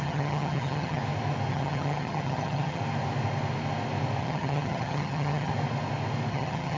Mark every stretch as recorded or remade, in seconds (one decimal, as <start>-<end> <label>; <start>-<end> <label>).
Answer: 0.0-1.0 remade; 1.0-1.5 recorded; 1.5-2.8 remade; 2.8-4.2 recorded; 4.2-5.5 remade; 5.5-6.3 recorded; 6.3-6.8 remade